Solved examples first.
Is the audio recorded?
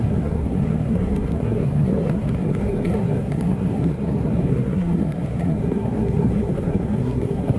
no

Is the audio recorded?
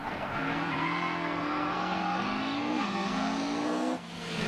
no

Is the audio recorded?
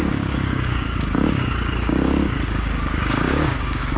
no